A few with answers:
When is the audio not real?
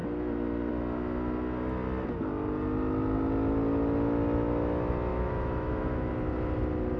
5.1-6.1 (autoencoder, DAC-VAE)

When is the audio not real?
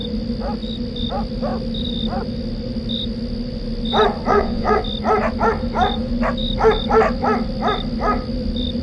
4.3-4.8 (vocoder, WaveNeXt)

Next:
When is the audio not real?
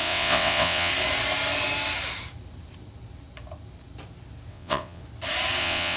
0.0-0.9 (vocoder, WaveNeXt); 4.5-5.0; 5.6-6.0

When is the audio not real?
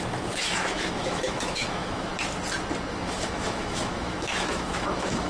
0.0-2.1 (autoencoder, DAC-VAE); 2.9-5.3